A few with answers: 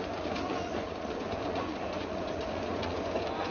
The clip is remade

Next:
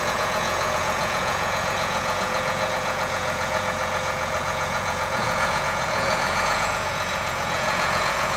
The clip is remade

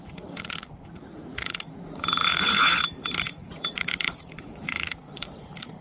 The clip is remade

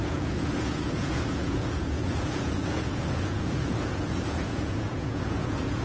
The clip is remade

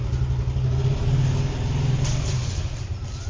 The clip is recorded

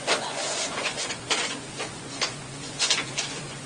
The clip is remade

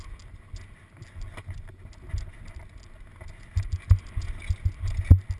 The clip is recorded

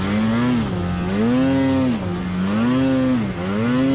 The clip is recorded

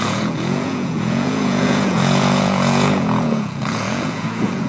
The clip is remade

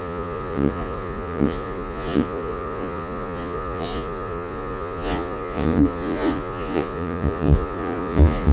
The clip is remade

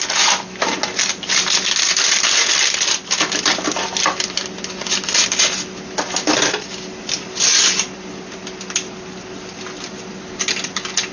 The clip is recorded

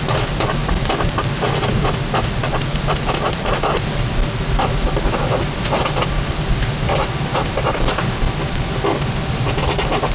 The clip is recorded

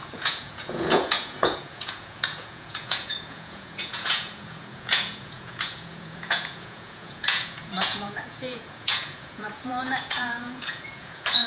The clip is remade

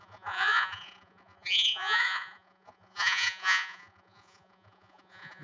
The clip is remade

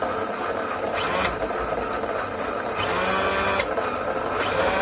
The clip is recorded